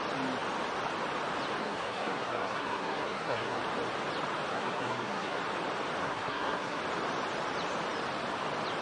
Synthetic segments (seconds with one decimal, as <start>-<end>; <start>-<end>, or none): 1.6-3.6; 4.5-5.4; 6.0-6.8